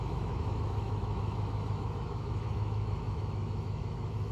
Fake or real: fake